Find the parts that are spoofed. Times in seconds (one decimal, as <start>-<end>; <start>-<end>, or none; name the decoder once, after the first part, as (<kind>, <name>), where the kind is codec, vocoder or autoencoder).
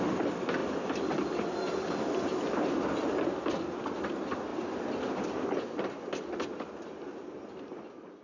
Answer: none